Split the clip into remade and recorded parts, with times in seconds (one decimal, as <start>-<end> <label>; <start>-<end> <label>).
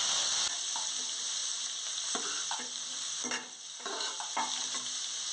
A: 0.0-5.3 recorded